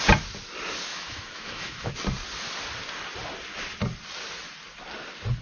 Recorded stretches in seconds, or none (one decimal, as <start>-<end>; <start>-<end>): 0.0-0.9; 1.9-5.4